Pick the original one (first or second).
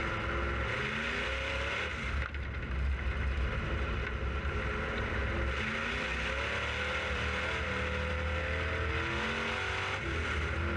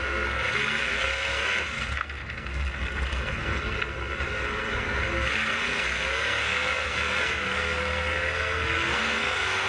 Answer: first